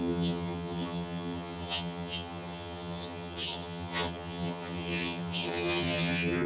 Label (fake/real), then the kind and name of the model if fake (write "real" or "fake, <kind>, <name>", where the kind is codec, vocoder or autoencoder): fake, vocoder, HiFi-GAN